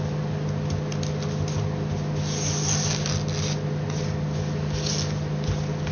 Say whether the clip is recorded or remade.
recorded